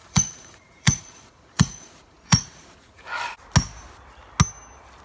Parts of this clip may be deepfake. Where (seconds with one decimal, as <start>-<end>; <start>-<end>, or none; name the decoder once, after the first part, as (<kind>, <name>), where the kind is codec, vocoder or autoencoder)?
0.0-3.0 (vocoder, Vocos)